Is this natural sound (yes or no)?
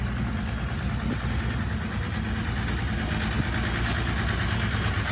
yes